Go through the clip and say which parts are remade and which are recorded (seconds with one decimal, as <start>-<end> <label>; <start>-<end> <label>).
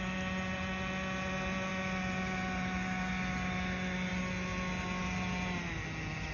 0.0-6.3 recorded